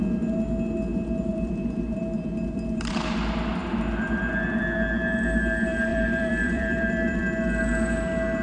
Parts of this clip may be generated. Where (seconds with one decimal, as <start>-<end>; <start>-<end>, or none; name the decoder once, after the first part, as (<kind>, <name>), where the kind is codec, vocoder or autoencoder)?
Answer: 0.9-2.9 (vocoder, BigVGAN v2); 5.9-7.2